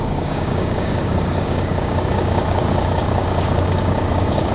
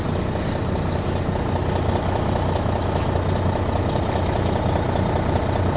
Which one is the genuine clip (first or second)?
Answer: second